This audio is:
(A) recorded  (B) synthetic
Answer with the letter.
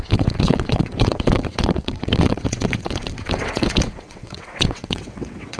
B